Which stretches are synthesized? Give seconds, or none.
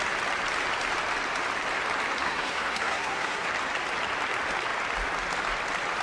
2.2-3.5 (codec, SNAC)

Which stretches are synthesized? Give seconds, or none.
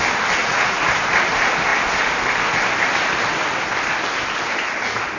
0.4-0.9 (vocoder, Vocos)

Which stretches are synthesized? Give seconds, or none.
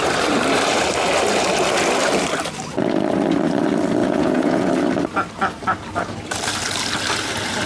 4.0-4.7 (vocoder, Vocos)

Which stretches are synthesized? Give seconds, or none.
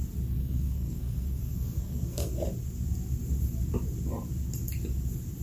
0.4-2.5 (codec, SNAC)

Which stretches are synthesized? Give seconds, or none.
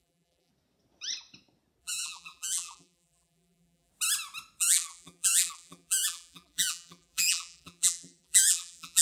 0.0-0.5 (vocoder, BigVGAN v2); 1.8-3.9; 4.6-9.0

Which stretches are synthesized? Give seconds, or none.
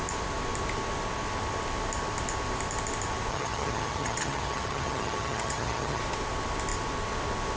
3.3-6.0 (vocoder, HiFi-GAN)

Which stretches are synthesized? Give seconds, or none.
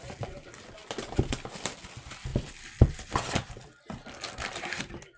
none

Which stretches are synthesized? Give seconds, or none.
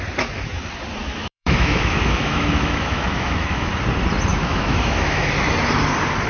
1.0-3.7 (autoencoder, DAC-VAE); 4.3-5.3